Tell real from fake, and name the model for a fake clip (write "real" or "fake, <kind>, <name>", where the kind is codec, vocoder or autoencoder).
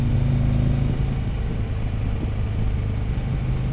real